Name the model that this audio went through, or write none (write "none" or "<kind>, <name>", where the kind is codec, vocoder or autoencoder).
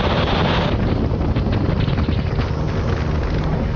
none